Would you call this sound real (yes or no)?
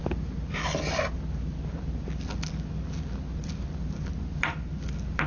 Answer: yes